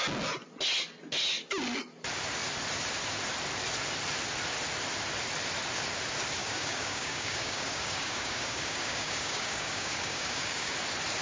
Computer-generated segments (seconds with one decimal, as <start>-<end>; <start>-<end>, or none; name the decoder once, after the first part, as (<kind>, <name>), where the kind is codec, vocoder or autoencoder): 6.4-10.7 (codec, DAC)